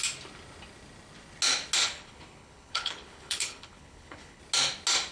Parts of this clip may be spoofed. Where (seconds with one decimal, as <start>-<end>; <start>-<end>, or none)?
1.8-4.4